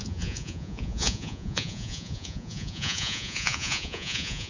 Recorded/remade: remade